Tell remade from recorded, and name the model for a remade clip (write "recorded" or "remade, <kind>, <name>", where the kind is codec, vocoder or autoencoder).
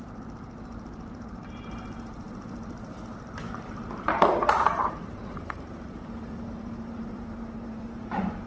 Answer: remade, vocoder, BigVGAN v2